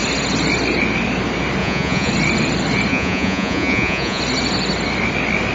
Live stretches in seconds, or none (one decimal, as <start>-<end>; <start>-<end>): 0.0-1.6; 2.1-2.9; 4.2-5.5